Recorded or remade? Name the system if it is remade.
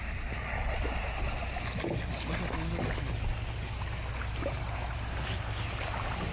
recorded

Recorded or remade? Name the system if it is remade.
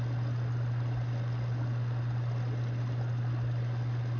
recorded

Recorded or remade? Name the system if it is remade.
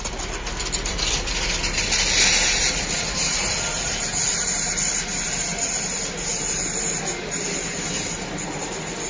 recorded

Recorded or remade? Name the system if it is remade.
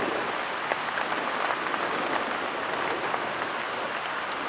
recorded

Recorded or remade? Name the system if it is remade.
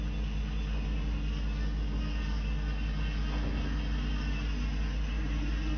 recorded